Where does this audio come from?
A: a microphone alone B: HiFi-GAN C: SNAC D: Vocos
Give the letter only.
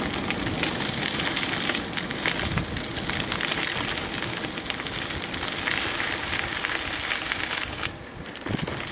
A